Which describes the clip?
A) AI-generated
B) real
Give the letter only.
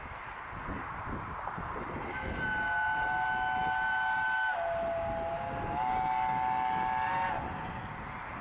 B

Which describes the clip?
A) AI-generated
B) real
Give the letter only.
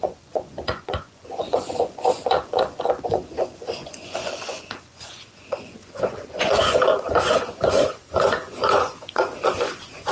A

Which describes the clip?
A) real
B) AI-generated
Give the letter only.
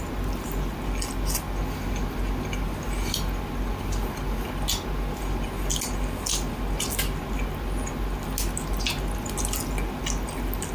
A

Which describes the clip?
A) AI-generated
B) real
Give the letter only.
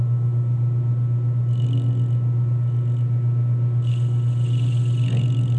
B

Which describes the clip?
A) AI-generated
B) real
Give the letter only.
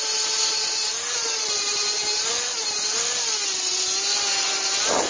B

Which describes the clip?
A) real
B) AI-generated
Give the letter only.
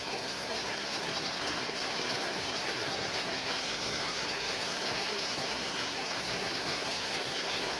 B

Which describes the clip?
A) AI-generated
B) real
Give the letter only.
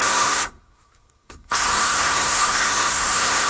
A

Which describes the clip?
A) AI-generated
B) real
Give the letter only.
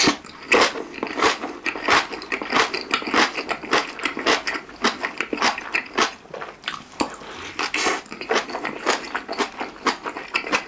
B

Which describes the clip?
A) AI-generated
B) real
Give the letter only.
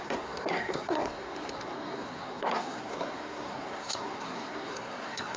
A